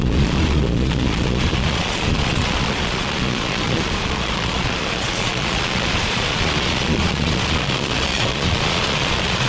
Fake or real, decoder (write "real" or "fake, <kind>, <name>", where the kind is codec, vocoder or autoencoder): fake, vocoder, Vocos